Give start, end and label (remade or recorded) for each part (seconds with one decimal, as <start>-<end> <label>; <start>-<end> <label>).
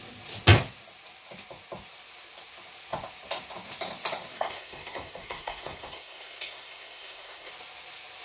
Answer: 0.0-4.3 recorded; 4.3-7.5 remade; 7.5-8.2 recorded